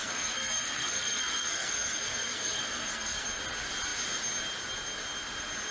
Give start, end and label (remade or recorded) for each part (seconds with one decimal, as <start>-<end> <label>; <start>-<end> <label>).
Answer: 0.0-3.4 remade; 3.4-5.7 recorded